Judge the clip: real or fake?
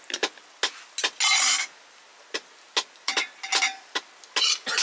real